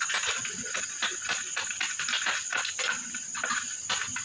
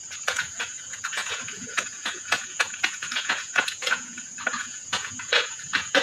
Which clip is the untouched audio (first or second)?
first